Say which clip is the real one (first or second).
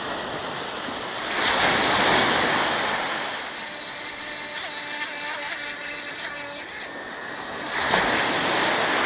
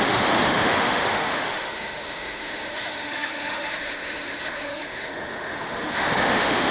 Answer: first